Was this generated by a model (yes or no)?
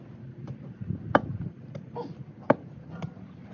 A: no